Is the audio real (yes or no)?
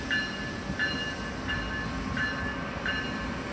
yes